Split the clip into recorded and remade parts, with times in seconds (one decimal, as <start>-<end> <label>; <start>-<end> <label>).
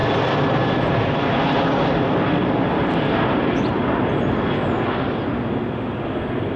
0.0-6.6 recorded